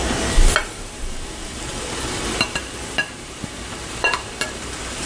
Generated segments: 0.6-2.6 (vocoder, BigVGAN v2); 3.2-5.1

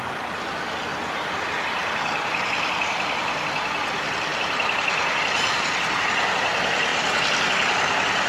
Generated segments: 4.3-5.8 (vocoder, BigVGAN v2)

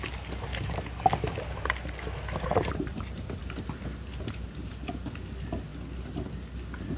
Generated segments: 4.1-4.7 (vocoder, BigVGAN v2)

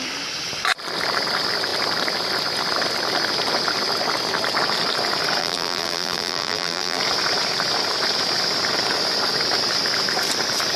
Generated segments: 5.4-7.0 (vocoder, BigVGAN v2)

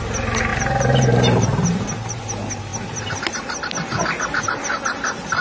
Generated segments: 0.5-2.2 (vocoder, BigVGAN v2)